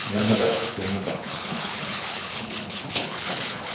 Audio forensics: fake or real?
fake